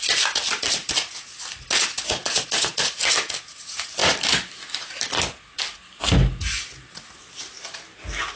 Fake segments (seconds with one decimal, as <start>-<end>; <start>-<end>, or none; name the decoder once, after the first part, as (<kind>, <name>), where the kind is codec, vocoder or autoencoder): none